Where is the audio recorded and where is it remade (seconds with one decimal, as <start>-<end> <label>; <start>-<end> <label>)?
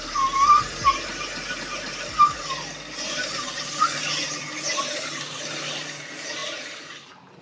0.0-7.4 recorded